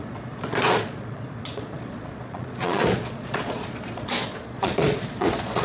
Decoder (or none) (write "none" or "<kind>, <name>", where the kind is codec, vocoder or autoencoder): vocoder, Vocos